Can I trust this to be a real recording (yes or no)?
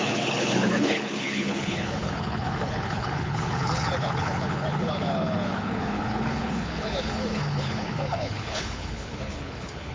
no